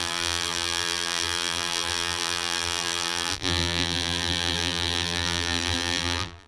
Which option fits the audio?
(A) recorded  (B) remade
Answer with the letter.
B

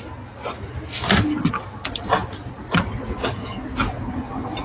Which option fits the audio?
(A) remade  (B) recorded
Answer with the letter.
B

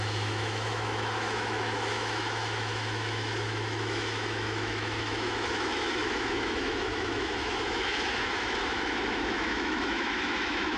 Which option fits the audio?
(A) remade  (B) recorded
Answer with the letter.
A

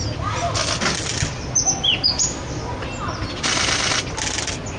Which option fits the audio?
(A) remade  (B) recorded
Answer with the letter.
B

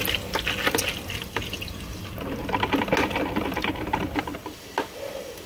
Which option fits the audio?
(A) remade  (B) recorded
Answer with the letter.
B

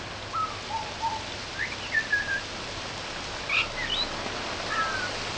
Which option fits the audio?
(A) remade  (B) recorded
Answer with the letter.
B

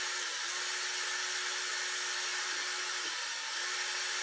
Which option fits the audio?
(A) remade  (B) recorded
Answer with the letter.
B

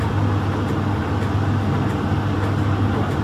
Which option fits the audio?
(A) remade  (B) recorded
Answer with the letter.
B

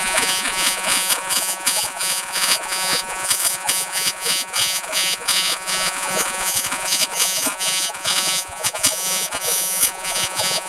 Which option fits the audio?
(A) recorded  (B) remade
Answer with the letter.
B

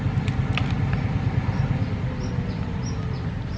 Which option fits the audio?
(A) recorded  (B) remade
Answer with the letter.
A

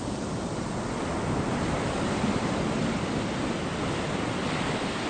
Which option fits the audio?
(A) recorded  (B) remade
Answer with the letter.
A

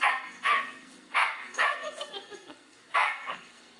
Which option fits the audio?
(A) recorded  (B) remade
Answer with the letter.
B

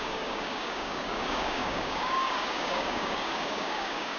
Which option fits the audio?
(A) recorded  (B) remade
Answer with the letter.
B